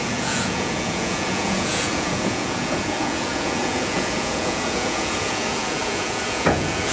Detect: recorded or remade remade